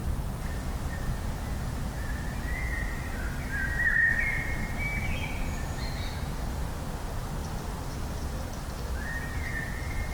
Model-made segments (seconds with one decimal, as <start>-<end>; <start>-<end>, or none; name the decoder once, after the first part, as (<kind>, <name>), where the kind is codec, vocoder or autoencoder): 4.9-6.7 (vocoder, BigVGAN v2); 7.4-9.0

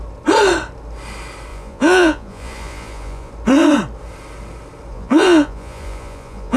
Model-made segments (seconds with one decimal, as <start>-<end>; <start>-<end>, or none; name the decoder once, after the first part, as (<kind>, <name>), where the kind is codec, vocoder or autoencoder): 1.5-3.3 (vocoder, Vocos); 4.9-6.6

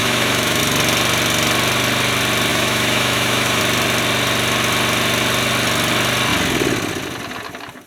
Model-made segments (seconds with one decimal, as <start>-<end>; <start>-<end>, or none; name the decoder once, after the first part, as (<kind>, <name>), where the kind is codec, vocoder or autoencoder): 0.0-0.6 (autoencoder, DAC-VAE); 2.5-3.6

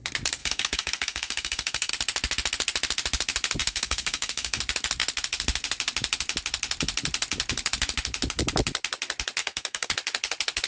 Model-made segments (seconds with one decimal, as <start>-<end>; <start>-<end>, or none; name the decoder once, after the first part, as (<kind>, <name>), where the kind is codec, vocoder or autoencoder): 0.4-1.9 (codec, SNAC); 3.6-4.6; 9.4-9.9

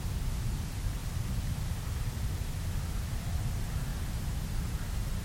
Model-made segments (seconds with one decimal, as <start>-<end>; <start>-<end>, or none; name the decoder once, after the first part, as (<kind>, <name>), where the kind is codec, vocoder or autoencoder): 0.0-1.0 (vocoder, BigVGAN v2); 2.9-3.9; 4.6-5.2

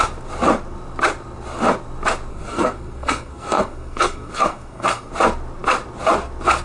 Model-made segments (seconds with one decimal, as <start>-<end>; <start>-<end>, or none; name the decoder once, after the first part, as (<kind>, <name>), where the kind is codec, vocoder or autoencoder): 2.3-5.1 (codec, SNAC)

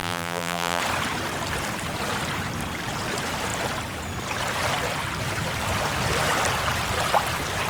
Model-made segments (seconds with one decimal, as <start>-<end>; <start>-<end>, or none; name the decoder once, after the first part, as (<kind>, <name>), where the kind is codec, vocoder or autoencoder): 0.0-0.8 (vocoder, BigVGAN v2)